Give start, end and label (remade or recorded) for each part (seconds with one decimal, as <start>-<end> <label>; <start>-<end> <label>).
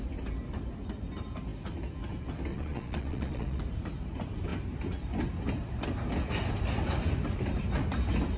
0.0-2.5 recorded; 2.5-3.6 remade; 3.6-8.4 recorded